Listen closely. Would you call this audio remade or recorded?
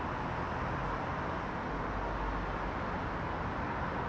recorded